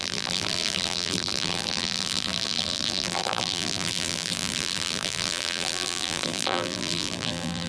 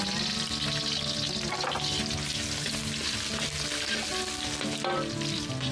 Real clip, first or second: second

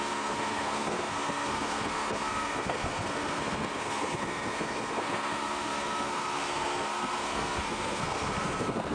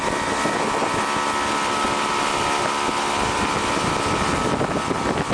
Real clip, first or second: second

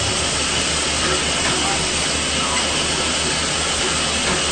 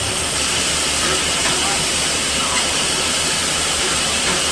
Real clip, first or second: first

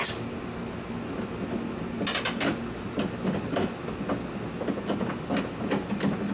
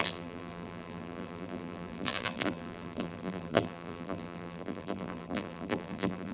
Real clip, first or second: first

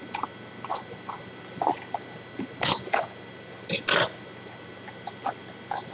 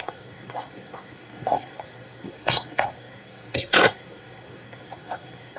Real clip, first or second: first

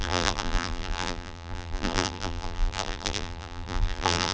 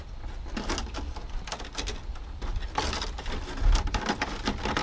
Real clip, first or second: second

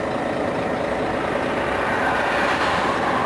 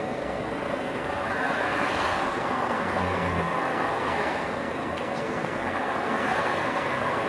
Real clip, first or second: first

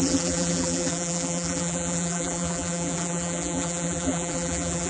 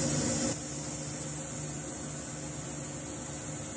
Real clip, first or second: second